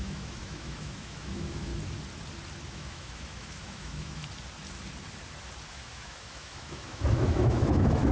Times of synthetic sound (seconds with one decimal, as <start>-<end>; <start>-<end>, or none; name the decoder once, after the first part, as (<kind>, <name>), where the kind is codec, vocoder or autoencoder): 0.0-1.7 (autoencoder, DAC-VAE); 2.7-4.2; 5.7-8.1